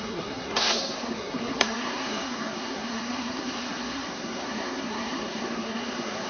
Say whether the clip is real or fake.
fake